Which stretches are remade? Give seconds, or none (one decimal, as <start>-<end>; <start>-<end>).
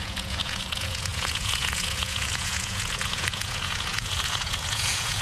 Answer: 0.0-5.2